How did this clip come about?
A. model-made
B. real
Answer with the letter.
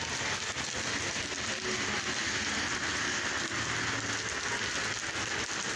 B